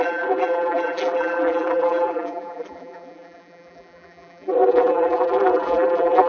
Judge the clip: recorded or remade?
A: remade